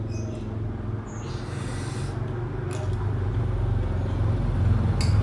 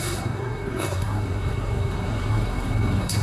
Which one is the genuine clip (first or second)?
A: first